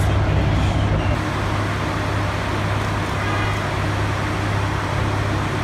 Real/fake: real